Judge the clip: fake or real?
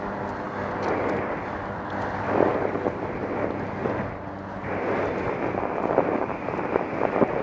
real